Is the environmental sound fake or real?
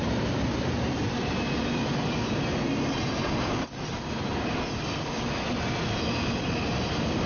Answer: real